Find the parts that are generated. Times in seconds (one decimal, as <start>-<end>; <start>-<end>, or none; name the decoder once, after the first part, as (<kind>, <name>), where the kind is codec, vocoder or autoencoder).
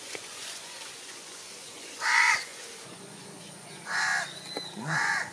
0.0-4.1 (vocoder, Vocos); 4.7-5.3